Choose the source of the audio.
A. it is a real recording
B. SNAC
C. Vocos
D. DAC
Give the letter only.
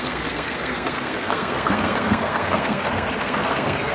B